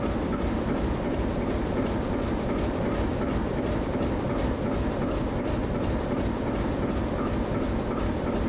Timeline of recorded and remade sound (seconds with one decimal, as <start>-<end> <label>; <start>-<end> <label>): 0.0-8.5 recorded